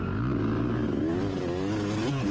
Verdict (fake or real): real